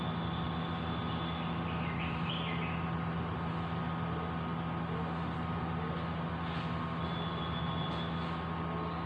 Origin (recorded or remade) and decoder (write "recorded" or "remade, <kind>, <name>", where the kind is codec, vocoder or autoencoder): recorded